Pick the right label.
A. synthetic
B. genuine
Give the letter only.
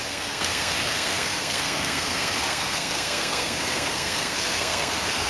A